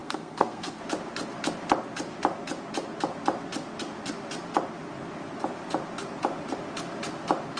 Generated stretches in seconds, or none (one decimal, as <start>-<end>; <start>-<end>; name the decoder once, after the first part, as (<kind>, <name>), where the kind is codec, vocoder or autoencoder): 0.0-0.8 (codec, SNAC)